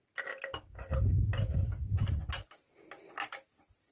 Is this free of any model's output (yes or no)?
yes